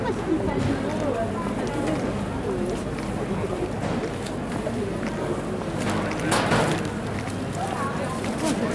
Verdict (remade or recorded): recorded